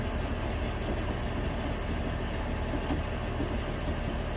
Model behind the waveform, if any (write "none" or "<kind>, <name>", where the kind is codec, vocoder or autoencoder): none